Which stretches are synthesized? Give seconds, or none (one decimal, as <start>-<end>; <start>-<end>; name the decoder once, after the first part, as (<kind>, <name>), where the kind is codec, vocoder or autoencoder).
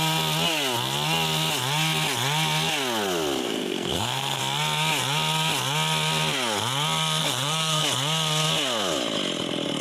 3.4-4.4 (codec, SNAC); 7.2-7.8